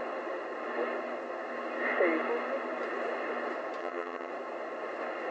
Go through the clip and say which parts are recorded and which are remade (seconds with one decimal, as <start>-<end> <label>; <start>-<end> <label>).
0.0-3.8 recorded; 3.8-4.3 remade; 4.3-5.3 recorded